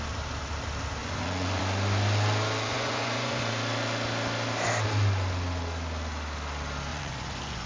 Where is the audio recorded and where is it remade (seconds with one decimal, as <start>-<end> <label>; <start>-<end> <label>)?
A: 0.0-1.0 recorded; 1.0-1.6 remade; 1.6-2.7 recorded; 2.7-3.4 remade; 3.4-6.9 recorded; 6.9-7.7 remade